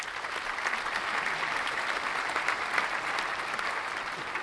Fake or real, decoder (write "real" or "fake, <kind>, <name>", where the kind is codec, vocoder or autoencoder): real